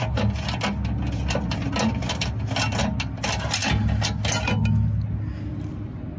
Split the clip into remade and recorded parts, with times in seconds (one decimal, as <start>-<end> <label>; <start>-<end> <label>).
0.0-6.2 recorded